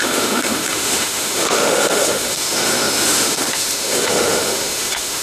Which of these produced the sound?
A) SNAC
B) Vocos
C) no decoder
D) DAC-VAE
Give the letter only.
D